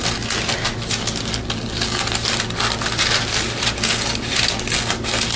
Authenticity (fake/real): real